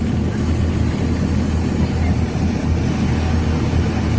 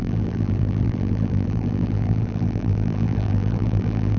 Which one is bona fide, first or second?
first